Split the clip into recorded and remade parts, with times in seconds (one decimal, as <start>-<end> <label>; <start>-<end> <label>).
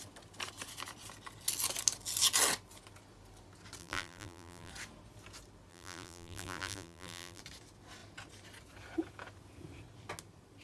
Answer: 0.0-3.8 recorded; 3.8-4.7 remade; 4.7-5.7 recorded; 5.7-7.4 remade; 7.4-10.6 recorded